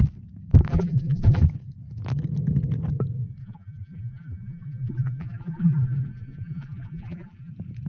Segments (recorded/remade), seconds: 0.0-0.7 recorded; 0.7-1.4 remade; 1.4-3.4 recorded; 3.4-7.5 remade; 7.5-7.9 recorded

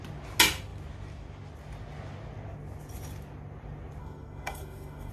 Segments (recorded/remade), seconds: 0.0-4.0 recorded; 4.0-5.1 remade

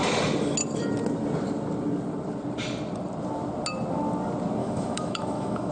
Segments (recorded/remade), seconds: 0.0-4.6 recorded; 4.6-5.7 remade

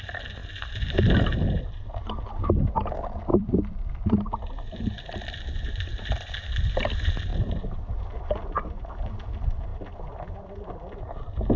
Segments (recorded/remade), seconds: 0.0-3.3 recorded; 3.3-3.9 remade; 3.9-7.3 recorded; 7.3-9.1 remade; 9.1-9.7 recorded; 9.7-10.3 remade; 10.3-11.6 recorded

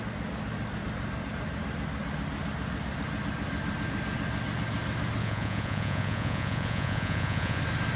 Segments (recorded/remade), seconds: 0.0-5.2 recorded; 5.2-7.6 remade; 7.6-8.0 recorded

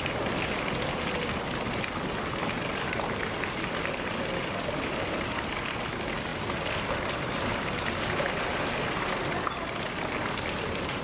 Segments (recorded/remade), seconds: 0.0-11.0 recorded

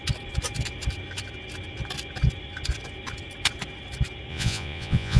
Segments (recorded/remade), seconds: 0.0-4.3 recorded; 4.3-5.2 remade

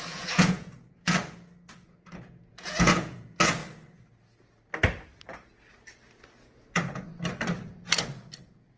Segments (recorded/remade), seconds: 0.0-1.2 remade; 1.2-1.7 recorded; 1.7-3.6 remade; 3.6-6.4 recorded; 6.4-7.1 remade; 7.1-8.4 recorded; 8.4-8.8 remade